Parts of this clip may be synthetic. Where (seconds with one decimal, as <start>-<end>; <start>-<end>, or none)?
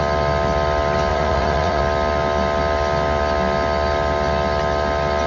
1.1-1.8